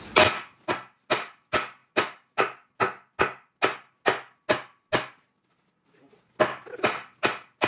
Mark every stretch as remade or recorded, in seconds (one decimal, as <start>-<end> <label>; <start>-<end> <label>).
0.0-7.7 recorded